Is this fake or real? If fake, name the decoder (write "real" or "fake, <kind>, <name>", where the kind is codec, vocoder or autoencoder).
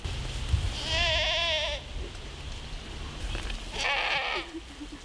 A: real